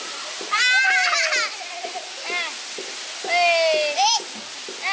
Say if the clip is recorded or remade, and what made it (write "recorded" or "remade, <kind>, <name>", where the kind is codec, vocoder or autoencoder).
recorded